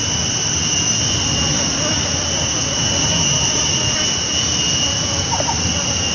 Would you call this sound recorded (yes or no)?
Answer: yes